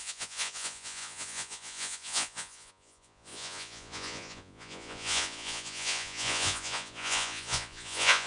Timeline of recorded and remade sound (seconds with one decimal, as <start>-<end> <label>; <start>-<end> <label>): 0.0-8.3 remade